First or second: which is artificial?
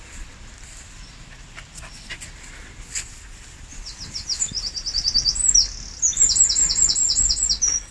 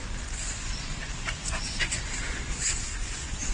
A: second